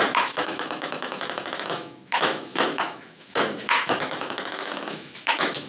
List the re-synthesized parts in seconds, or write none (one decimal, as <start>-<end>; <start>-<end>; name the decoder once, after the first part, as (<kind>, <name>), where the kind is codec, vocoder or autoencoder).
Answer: 0.0-5.7 (autoencoder, DAC-VAE)